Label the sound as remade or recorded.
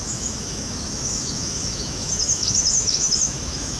remade